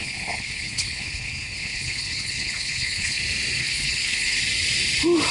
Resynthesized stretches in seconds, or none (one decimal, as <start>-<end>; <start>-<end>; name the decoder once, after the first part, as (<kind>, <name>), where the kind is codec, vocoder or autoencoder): 0.0-3.2 (codec, HILCodec); 3.6-4.4